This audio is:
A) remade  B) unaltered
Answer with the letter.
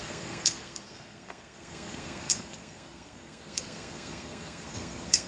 A